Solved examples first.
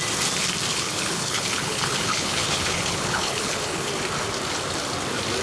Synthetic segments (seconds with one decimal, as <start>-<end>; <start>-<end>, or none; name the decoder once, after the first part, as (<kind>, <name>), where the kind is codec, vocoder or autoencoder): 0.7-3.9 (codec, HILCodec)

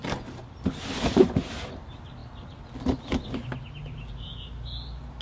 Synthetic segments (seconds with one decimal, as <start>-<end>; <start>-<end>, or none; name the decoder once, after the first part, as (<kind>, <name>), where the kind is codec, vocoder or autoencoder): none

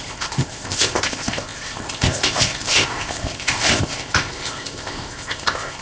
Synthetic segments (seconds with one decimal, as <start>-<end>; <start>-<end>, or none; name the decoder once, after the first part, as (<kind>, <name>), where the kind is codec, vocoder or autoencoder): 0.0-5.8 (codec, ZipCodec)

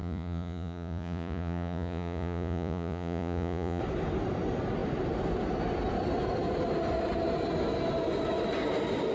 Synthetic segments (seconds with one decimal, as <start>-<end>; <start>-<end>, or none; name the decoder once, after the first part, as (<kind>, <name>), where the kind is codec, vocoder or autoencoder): 0.0-3.8 (vocoder, Vocos)

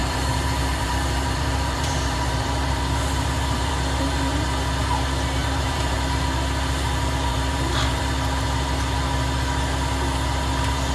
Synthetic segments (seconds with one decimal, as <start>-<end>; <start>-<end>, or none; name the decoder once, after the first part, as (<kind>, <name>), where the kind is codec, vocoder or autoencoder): 0.0-3.7 (vocoder, BigVGAN v2); 5.4-6.0; 7.3-8.0

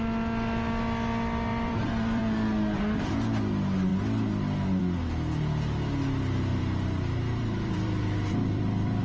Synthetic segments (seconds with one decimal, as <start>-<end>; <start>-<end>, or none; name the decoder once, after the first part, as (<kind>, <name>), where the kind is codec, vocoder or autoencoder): 1.5-2.2 (vocoder, BigVGAN v2); 6.5-9.0

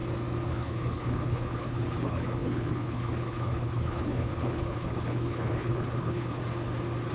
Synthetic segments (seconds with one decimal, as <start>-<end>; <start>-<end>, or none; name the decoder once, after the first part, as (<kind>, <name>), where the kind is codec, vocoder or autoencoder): 0.5-6.4 (codec, HILCodec)